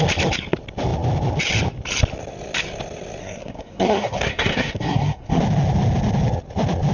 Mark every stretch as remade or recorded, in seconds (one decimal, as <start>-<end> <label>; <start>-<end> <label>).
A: 0.0-3.2 recorded; 3.2-5.4 remade; 5.4-6.9 recorded